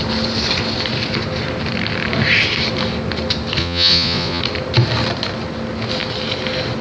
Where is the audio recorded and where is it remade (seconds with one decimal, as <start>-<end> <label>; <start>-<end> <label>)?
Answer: 0.0-3.6 recorded; 3.6-4.4 remade; 4.4-6.8 recorded